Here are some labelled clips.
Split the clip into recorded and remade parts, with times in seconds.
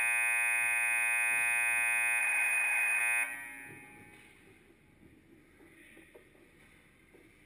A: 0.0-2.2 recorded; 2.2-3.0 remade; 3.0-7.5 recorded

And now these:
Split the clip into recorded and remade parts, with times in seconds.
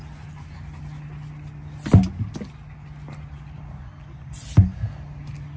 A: 0.0-5.6 recorded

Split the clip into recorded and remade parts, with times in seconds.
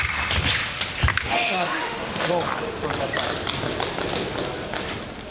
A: 0.0-1.1 recorded; 1.1-2.3 remade; 2.3-5.3 recorded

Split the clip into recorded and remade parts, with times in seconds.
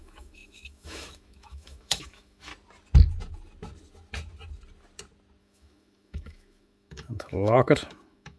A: 0.0-2.5 remade; 2.5-5.4 recorded; 5.4-8.4 remade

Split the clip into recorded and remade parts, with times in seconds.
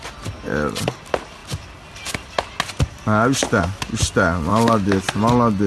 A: 0.0-4.5 recorded; 4.5-5.0 remade; 5.0-5.7 recorded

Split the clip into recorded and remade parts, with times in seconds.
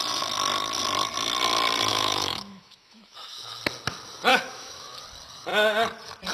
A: 0.0-1.9 recorded; 1.9-3.6 remade; 3.6-4.3 recorded; 4.3-5.0 remade; 5.0-6.3 recorded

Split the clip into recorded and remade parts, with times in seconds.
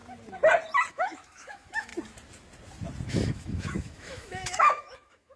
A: 0.0-0.9 recorded; 0.9-1.9 remade; 1.9-3.1 recorded; 3.1-5.4 remade